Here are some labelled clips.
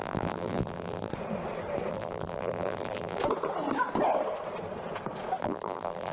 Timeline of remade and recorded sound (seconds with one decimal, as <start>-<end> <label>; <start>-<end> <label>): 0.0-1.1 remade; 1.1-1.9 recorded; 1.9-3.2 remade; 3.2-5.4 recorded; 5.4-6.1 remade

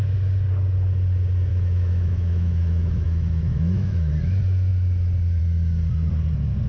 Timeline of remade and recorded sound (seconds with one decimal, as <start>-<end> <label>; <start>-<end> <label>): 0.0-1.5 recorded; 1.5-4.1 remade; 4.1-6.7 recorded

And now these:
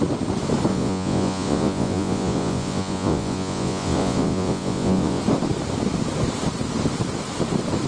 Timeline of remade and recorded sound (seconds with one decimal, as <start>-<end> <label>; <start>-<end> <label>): 0.0-0.7 recorded; 0.7-5.2 remade; 5.2-7.9 recorded